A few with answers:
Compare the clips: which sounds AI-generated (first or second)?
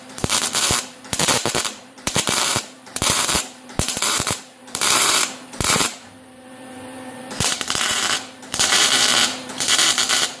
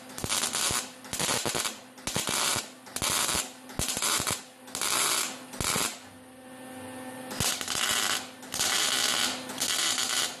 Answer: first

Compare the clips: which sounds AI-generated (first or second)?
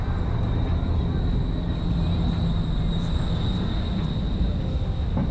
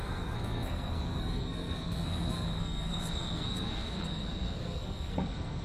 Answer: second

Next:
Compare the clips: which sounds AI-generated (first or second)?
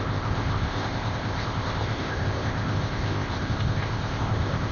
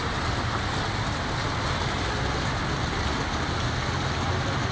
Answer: first